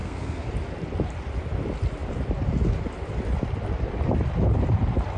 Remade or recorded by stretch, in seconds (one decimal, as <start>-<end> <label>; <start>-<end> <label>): 0.0-0.5 remade; 0.5-5.2 recorded